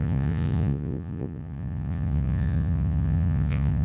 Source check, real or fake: fake